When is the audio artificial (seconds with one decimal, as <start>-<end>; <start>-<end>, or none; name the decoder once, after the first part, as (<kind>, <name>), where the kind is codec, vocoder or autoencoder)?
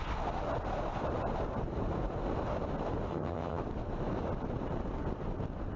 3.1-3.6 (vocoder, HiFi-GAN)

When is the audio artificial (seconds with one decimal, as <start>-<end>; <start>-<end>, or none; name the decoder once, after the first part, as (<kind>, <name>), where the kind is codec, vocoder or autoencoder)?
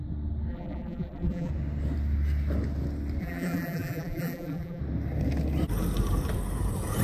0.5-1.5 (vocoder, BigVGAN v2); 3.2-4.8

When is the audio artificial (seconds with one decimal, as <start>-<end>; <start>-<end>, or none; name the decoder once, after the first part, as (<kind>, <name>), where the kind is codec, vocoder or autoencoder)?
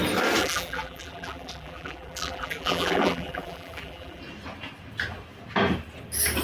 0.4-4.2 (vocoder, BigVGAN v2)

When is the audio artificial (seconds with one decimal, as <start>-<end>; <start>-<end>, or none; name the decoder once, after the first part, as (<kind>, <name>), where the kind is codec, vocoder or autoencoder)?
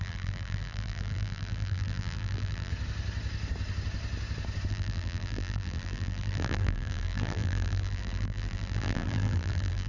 0.0-2.7 (vocoder, BigVGAN v2); 4.7-9.9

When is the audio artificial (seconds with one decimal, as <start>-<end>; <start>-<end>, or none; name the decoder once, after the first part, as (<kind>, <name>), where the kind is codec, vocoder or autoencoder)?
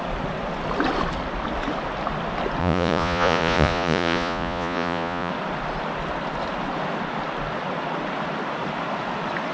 2.6-5.3 (vocoder, Vocos)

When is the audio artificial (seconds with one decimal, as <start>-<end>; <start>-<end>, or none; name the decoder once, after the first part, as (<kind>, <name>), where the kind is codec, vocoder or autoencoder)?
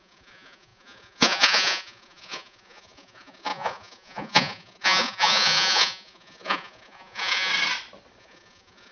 0.0-7.5 (vocoder, Vocos); 8.2-8.9